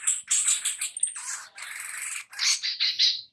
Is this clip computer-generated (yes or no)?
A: no